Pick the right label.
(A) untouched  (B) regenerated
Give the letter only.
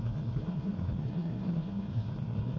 B